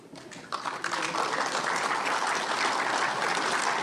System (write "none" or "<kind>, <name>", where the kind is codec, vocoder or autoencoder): none